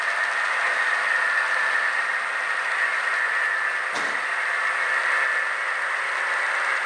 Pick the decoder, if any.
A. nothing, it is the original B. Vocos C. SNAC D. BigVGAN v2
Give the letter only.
A